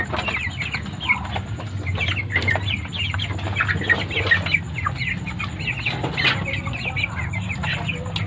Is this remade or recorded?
recorded